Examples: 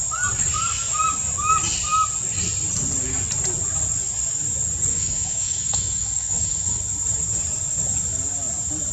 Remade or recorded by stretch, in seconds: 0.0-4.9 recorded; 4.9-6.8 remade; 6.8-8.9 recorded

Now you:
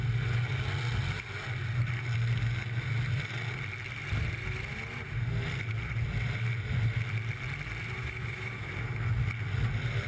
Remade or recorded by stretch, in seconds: 0.0-8.0 recorded; 8.0-8.7 remade; 8.7-10.1 recorded

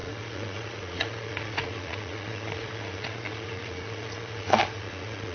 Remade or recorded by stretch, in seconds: 0.0-5.3 remade